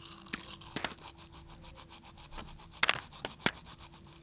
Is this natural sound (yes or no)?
yes